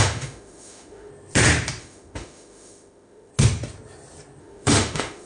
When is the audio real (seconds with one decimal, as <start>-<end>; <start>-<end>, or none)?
1.1-1.8; 3.3-4.4